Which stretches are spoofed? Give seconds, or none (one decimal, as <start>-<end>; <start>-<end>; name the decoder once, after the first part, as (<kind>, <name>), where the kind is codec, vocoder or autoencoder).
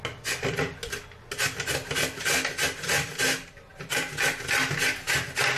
none